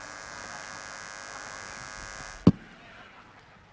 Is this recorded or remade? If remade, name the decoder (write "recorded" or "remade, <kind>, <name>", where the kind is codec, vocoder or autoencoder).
recorded